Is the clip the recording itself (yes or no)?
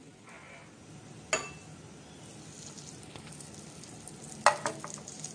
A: yes